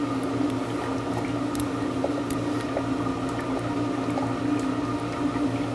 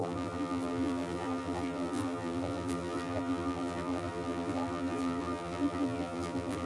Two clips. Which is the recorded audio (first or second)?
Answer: first